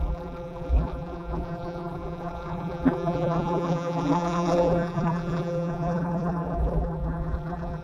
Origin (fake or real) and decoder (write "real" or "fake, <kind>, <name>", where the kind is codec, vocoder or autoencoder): fake, vocoder, BigVGAN v2